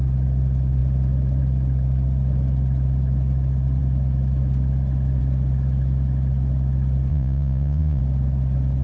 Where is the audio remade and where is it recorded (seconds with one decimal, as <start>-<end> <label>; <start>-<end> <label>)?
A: 0.0-7.1 recorded; 7.1-8.0 remade; 8.0-8.8 recorded